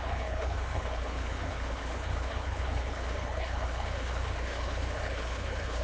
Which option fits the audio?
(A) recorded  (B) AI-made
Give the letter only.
B